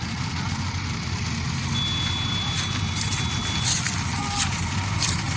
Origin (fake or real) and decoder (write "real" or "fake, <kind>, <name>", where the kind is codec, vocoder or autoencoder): real